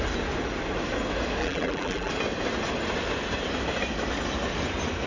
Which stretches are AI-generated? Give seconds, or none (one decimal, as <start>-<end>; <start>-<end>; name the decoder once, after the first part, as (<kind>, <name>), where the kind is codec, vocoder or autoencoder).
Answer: 1.4-2.1 (vocoder, BigVGAN v2)